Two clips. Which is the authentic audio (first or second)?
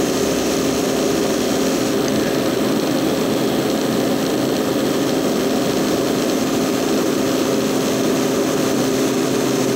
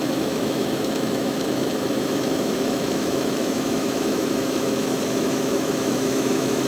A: first